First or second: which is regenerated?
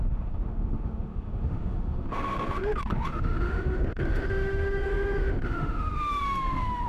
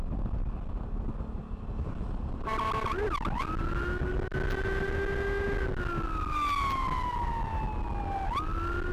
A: first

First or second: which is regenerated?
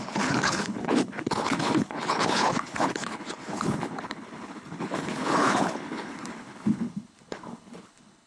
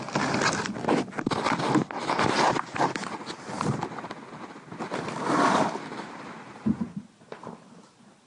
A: first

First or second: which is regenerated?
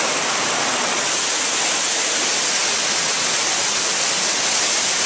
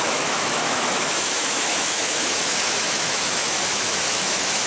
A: second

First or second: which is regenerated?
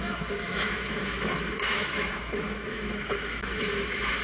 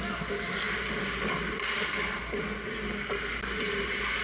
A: first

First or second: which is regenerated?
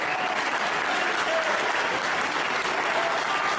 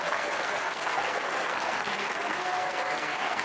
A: second